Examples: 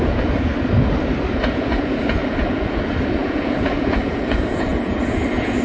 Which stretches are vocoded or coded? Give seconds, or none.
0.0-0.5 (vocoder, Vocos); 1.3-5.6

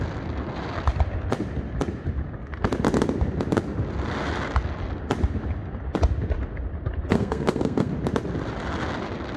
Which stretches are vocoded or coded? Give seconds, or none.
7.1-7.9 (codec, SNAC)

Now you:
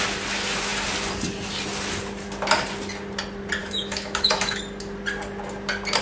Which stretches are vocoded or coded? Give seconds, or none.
3.6-4.6 (autoencoder, DAC-VAE)

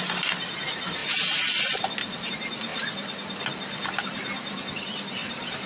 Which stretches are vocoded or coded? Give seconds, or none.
none

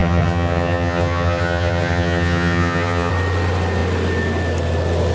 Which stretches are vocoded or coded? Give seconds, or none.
0.0-3.1 (vocoder, HiFi-GAN)

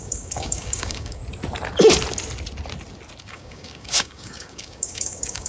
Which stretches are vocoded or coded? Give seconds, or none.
0.0-1.2 (codec, DAC); 3.2-5.5

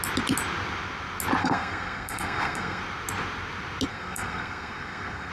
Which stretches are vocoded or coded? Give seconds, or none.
1.4-2.8 (codec, SNAC); 3.9-5.3

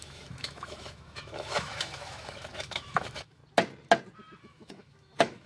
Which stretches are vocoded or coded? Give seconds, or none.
0.0-3.4 (autoencoder, DAC-VAE); 4.4-5.5